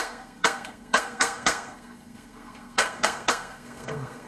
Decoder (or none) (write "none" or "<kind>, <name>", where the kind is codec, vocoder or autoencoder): codec, SNAC